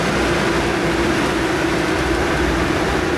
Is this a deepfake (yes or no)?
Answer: yes